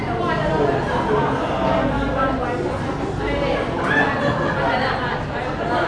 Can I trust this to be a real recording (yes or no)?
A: yes